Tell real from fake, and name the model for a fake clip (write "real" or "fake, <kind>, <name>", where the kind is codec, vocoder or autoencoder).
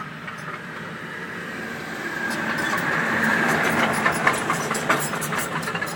fake, vocoder, BigVGAN v2